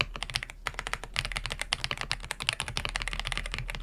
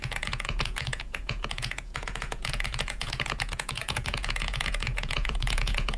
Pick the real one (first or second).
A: first